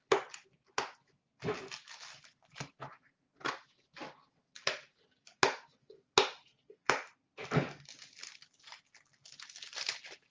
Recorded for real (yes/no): yes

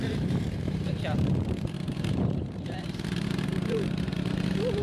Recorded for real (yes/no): no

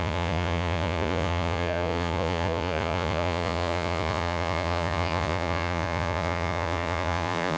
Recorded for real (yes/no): no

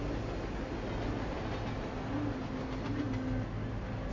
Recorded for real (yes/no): yes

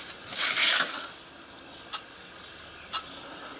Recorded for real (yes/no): yes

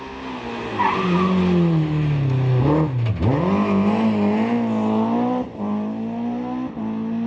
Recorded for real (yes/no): yes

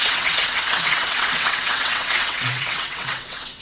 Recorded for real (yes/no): no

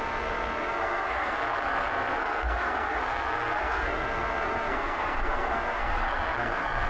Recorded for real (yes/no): no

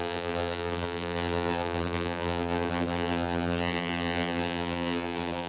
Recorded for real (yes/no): no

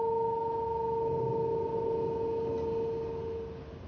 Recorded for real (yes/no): yes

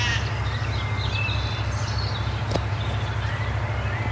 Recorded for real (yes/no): yes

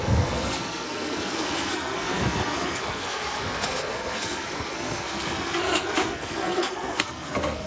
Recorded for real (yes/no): no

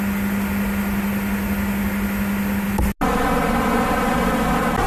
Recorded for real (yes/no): yes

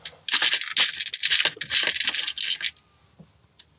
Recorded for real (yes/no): yes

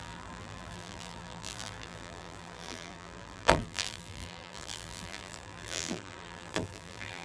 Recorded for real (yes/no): no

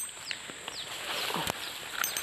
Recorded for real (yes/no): yes